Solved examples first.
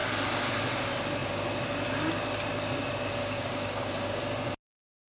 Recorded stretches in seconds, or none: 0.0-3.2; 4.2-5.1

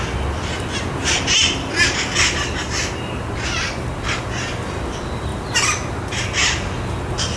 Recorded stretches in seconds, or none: 0.0-7.4

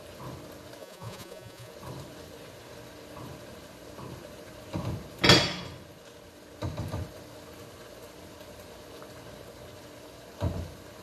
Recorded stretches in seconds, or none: 0.0-0.8; 1.7-11.0

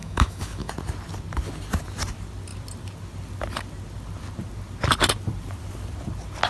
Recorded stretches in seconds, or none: 0.7-6.5

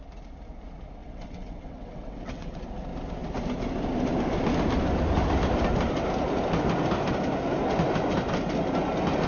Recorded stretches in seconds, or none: 0.0-1.0; 2.6-9.3

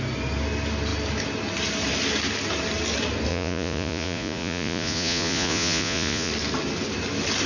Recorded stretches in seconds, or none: 0.0-3.3; 6.3-7.5

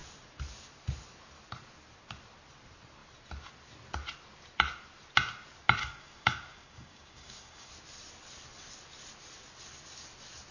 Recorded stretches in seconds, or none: 0.0-5.8; 7.7-10.5